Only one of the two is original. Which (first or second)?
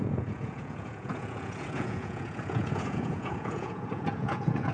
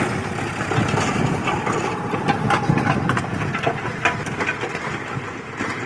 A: second